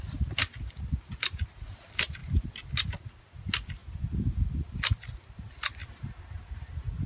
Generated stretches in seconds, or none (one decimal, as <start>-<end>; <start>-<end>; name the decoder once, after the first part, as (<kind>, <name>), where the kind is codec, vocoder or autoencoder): 3.8-4.6 (vocoder, BigVGAN v2); 5.8-6.5